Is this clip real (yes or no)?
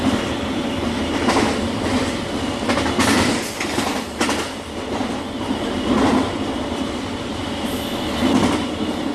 yes